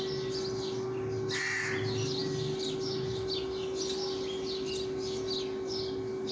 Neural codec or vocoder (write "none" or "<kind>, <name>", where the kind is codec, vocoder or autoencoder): none